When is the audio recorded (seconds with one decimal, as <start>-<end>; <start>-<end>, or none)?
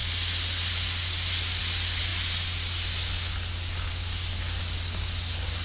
0.0-5.6